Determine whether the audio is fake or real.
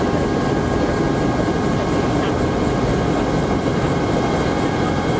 fake